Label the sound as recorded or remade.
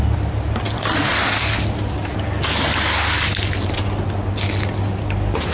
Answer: recorded